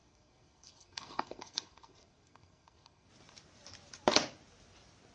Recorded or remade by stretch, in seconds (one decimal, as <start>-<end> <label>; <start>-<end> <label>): 0.0-3.1 remade; 3.1-5.1 recorded